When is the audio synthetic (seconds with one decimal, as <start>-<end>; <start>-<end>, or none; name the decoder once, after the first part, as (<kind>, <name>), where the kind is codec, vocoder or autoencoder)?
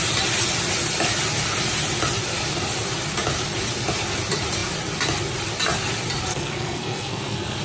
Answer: 6.3-7.6 (codec, SNAC)